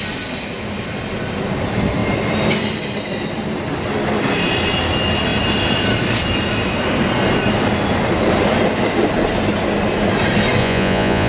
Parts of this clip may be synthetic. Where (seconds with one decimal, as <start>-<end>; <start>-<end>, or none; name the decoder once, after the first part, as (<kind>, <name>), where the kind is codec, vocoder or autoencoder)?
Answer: 10.6-11.3 (vocoder, Vocos)